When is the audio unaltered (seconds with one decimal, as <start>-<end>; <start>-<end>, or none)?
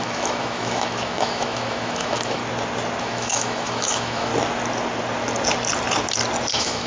2.4-3.0; 4.3-6.5